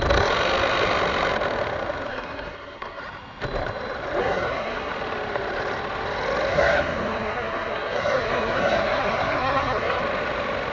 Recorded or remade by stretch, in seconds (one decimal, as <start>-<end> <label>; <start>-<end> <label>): 0.0-2.1 recorded; 2.1-3.0 remade; 3.0-4.2 recorded; 4.2-4.9 remade; 4.9-6.5 recorded; 6.5-10.0 remade; 10.0-10.7 recorded